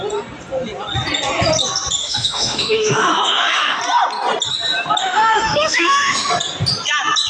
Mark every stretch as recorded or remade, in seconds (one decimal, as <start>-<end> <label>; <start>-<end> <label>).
0.0-2.0 recorded; 2.0-3.8 remade; 3.8-5.0 recorded; 5.0-6.3 remade; 6.3-7.3 recorded

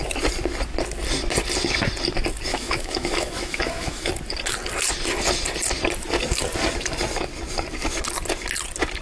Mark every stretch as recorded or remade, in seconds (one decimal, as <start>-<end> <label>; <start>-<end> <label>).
0.0-2.5 recorded; 2.5-4.1 remade; 4.1-9.0 recorded